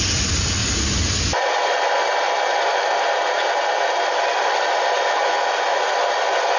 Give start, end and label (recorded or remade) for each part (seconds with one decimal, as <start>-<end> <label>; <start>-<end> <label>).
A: 0.0-6.6 recorded